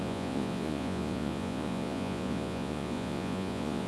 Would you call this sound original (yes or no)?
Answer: no